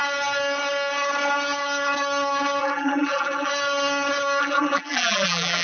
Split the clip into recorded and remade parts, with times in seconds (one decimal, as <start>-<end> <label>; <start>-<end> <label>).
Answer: 0.0-2.6 recorded; 2.6-3.5 remade; 3.5-4.4 recorded; 4.4-5.6 remade